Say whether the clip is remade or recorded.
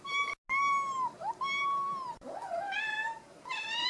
recorded